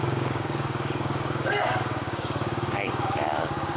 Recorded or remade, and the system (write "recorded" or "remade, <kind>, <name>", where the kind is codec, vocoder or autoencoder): remade, codec, DAC